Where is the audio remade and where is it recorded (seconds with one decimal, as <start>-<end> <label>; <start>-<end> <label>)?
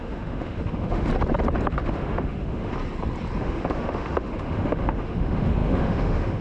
0.0-1.1 remade; 1.1-1.7 recorded; 1.7-2.7 remade; 2.7-3.4 recorded; 3.4-6.4 remade